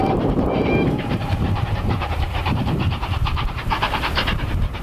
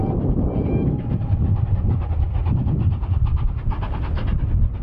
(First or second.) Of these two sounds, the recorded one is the second